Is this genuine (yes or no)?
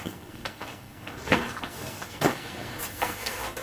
no